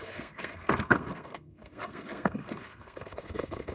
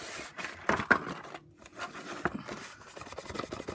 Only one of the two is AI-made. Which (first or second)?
first